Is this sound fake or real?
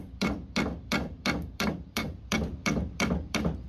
fake